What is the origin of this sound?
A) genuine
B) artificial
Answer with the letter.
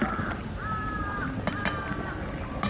A